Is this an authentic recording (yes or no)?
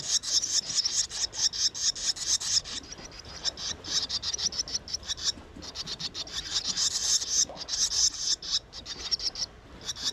yes